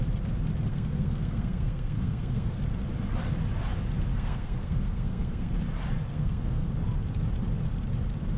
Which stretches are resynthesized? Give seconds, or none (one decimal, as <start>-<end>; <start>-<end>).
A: 0.7-2.6; 4.1-5.5; 6.1-6.7